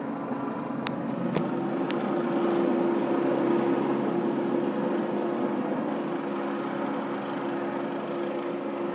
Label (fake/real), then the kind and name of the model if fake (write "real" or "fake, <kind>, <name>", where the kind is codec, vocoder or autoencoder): real